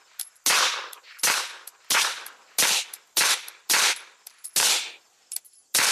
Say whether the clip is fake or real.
real